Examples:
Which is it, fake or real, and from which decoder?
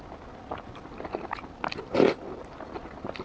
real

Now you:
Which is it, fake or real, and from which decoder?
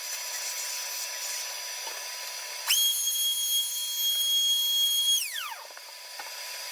real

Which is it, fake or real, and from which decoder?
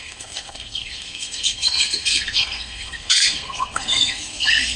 fake, codec, SNAC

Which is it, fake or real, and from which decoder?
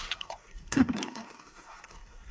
fake, codec, SNAC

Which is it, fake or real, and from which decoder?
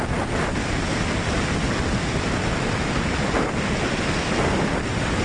real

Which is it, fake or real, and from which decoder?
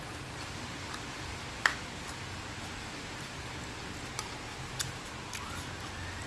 real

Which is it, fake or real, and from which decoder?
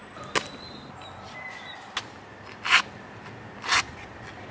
real